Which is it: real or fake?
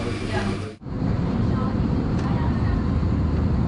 fake